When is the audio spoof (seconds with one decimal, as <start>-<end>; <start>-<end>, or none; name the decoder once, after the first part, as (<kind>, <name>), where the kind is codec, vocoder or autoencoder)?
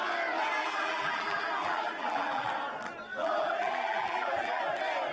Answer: 0.6-2.5 (vocoder, BigVGAN v2); 3.1-4.6